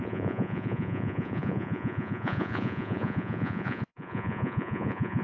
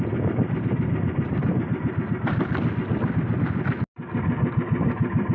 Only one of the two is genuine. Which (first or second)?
second